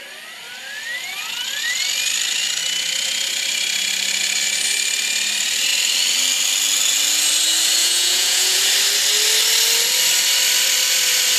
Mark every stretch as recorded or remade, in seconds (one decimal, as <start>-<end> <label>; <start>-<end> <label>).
0.0-7.8 recorded; 7.8-8.6 remade; 8.6-11.4 recorded